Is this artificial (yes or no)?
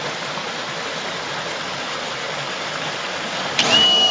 no